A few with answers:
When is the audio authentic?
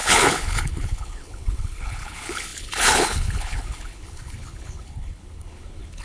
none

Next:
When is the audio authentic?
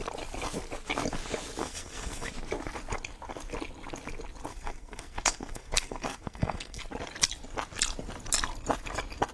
0.0-1.6; 2.3-4.5; 6.8-9.3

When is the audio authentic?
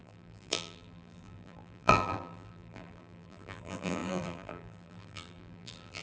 none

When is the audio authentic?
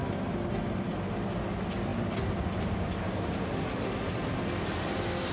0.0-5.3